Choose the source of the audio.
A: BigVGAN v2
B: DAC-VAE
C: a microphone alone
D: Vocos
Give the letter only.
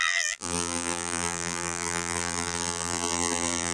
A